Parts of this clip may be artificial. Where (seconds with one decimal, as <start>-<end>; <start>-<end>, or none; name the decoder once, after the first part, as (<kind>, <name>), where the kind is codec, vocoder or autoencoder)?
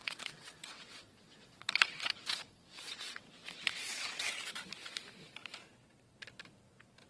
0.0-4.3 (vocoder, WaveNeXt)